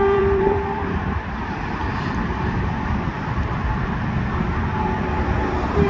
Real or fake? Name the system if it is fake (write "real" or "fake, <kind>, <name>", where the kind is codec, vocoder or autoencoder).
fake, vocoder, BigVGAN v2